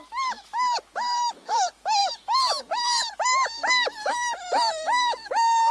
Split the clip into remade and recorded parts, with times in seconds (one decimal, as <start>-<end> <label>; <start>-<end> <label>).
0.0-5.7 remade